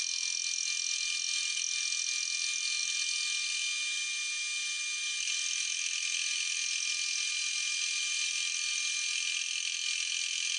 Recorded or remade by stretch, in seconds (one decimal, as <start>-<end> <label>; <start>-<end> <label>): 0.0-10.6 recorded